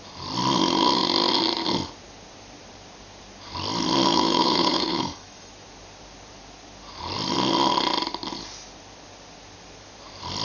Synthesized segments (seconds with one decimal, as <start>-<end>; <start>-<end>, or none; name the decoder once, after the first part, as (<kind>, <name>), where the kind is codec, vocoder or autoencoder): 4.1-5.5 (autoencoder, DAC-VAE)

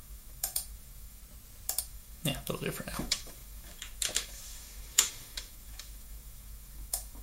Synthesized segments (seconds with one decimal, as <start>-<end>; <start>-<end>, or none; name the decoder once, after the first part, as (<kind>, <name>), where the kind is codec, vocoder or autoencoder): 0.0-1.2 (autoencoder, DAC-VAE); 1.8-7.2